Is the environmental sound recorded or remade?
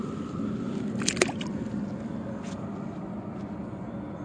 recorded